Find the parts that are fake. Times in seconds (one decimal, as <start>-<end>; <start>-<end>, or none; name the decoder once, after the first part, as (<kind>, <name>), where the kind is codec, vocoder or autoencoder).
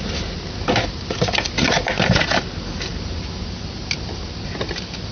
none